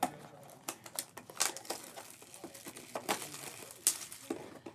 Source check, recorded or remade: recorded